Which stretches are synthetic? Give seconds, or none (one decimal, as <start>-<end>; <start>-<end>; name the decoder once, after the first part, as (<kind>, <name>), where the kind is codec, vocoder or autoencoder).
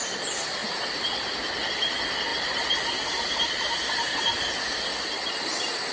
none